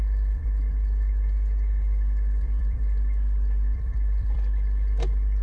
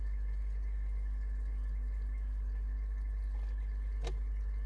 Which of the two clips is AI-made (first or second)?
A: first